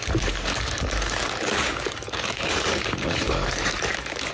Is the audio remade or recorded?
remade